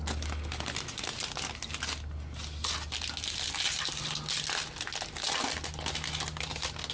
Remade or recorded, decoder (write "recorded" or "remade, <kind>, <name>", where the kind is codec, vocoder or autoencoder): recorded